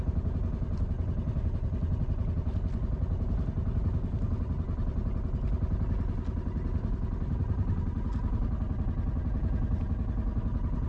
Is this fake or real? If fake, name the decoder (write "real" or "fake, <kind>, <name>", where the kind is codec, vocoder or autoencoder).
real